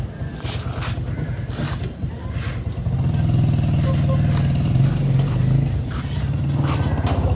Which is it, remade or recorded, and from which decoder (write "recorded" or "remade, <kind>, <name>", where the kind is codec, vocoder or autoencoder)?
recorded